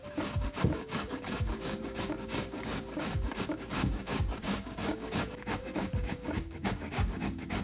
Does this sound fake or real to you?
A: fake